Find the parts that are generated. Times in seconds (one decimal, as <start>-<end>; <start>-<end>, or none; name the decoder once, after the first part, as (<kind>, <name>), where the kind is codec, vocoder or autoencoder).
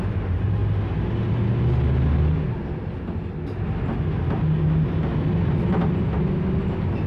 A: none